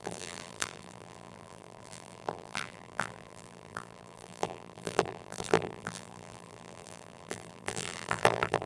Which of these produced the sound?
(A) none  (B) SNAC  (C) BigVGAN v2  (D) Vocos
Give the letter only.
C